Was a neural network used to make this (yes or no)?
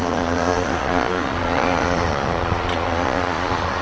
yes